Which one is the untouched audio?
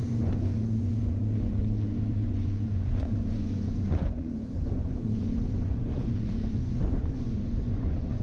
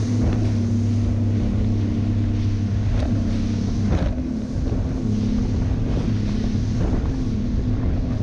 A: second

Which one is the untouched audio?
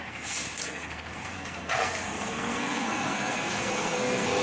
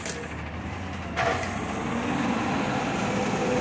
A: second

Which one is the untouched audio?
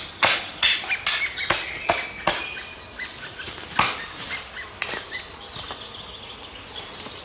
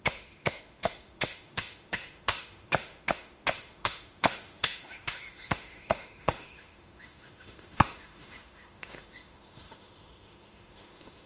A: first